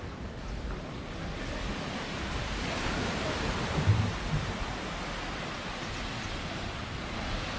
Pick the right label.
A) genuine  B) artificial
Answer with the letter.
A